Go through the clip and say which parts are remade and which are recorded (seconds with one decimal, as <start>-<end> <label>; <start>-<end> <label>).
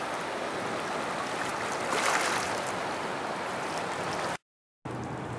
0.0-5.4 recorded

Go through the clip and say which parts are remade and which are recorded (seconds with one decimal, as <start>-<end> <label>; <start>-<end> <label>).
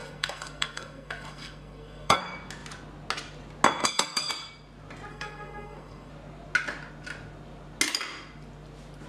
0.0-2.2 remade; 2.2-3.8 recorded; 3.8-4.3 remade; 4.3-5.1 recorded; 5.1-6.1 remade; 6.1-9.1 recorded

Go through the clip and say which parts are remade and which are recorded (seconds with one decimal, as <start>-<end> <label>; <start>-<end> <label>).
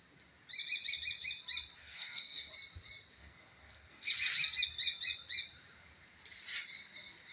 0.0-1.8 recorded; 1.8-2.5 remade; 2.5-3.2 recorded; 3.2-4.1 remade; 4.1-7.3 recorded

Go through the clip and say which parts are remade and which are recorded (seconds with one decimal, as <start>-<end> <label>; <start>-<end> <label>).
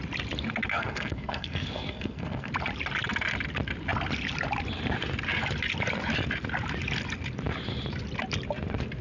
0.0-0.7 recorded; 0.7-2.5 remade; 2.5-9.0 recorded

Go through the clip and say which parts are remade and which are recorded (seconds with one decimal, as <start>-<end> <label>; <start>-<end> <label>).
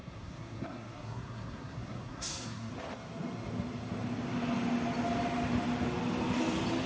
0.0-2.7 remade; 2.7-6.9 recorded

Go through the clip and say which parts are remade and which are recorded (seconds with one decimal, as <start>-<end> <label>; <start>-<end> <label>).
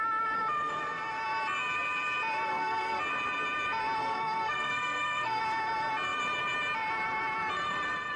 0.0-2.5 recorded; 2.5-3.0 remade; 3.0-4.0 recorded; 4.0-5.4 remade; 5.4-8.2 recorded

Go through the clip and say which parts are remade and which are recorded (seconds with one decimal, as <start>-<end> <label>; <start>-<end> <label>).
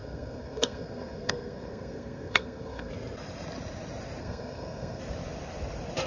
0.0-2.9 remade; 2.9-4.2 recorded; 4.2-5.0 remade; 5.0-6.1 recorded